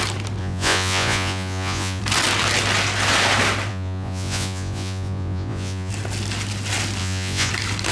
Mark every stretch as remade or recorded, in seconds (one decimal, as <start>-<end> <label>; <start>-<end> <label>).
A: 0.0-0.4 recorded; 0.4-2.0 remade; 2.0-3.7 recorded; 3.7-5.9 remade; 5.9-7.0 recorded; 7.0-7.5 remade; 7.5-7.9 recorded

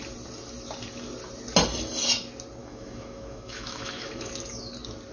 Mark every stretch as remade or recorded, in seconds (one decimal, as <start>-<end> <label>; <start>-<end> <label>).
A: 0.0-2.6 recorded; 2.6-4.3 remade; 4.3-5.1 recorded

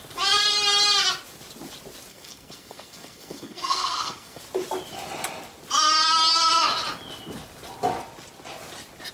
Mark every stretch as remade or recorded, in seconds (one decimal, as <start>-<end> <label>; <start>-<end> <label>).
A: 0.0-2.1 recorded; 2.1-4.4 remade; 4.4-9.1 recorded

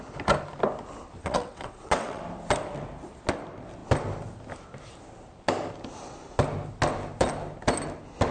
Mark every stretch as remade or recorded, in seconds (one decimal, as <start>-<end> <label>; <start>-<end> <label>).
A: 0.0-1.2 recorded; 1.2-2.2 remade; 2.2-8.3 recorded

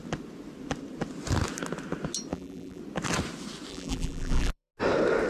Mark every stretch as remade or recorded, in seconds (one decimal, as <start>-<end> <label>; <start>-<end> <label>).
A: 0.0-2.3 recorded; 2.3-2.8 remade; 2.8-3.7 recorded; 3.7-4.7 remade; 4.7-5.3 recorded

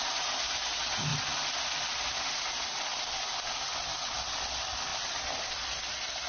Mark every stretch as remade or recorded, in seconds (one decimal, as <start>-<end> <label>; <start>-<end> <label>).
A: 0.0-6.3 recorded

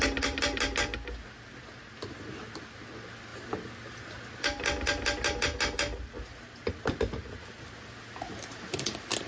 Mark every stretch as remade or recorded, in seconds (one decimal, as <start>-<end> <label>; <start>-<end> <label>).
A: 0.0-9.3 recorded